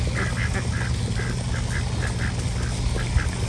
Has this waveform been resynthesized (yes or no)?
no